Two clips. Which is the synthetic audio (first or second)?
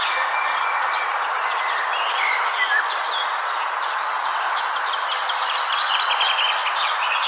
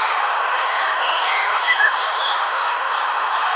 second